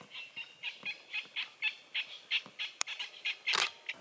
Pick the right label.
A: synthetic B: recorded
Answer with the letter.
B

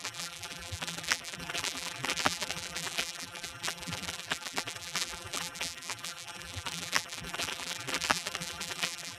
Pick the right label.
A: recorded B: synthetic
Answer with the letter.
B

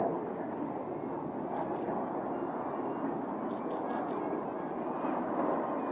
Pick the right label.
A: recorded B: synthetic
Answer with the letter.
A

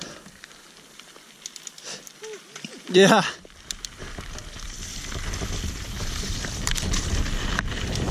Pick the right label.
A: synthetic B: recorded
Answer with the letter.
A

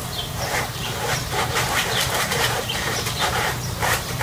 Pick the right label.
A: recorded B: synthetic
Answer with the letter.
B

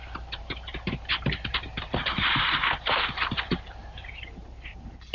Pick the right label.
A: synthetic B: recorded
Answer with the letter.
A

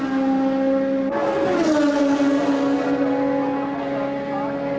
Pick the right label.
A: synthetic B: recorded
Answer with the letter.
B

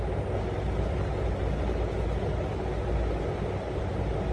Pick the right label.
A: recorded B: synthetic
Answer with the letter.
A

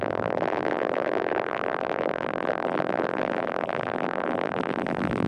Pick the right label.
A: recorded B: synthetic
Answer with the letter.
B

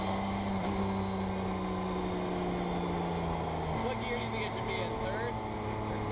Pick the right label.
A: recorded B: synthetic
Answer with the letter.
A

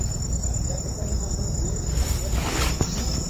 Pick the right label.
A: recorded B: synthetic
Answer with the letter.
A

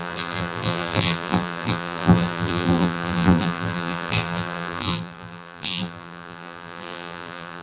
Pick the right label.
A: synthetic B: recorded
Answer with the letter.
A